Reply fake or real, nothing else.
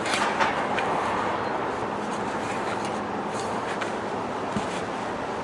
real